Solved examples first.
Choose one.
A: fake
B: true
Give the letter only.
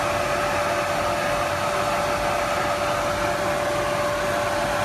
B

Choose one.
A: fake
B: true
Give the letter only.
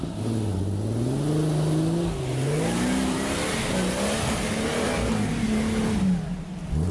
B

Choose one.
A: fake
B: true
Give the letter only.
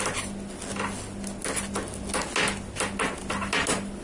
B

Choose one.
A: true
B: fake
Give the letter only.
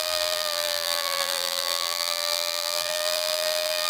B